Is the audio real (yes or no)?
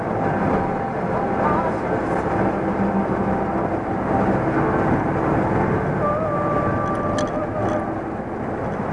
yes